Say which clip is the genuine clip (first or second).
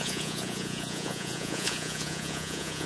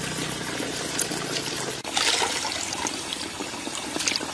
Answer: second